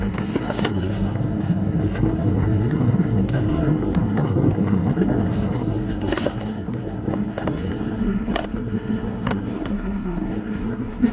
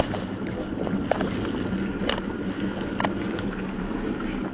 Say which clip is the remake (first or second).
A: first